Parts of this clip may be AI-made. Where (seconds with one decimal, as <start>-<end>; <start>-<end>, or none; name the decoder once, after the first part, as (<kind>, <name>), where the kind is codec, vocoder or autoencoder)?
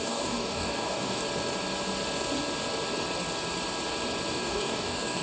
0.0-1.2 (codec, DAC); 4.3-5.2